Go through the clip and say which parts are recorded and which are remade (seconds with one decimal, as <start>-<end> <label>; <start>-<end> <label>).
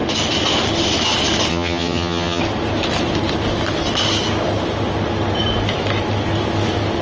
0.0-1.5 recorded; 1.5-2.4 remade; 2.4-7.0 recorded